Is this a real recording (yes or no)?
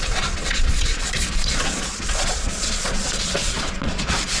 no